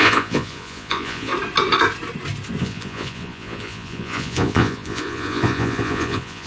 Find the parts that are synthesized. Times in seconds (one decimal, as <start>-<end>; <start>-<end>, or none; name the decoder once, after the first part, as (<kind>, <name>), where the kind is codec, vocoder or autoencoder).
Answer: 0.0-1.3 (vocoder, Vocos); 2.6-6.5